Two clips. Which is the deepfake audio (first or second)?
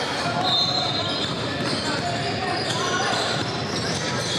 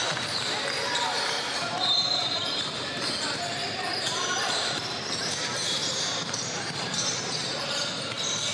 second